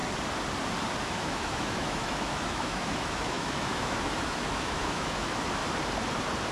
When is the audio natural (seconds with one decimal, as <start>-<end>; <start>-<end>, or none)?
0.0-1.0; 5.6-6.5